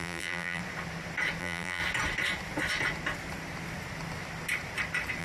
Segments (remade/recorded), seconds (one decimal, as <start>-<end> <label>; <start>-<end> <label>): 0.0-0.6 remade; 0.6-1.4 recorded; 1.4-1.8 remade; 1.8-5.2 recorded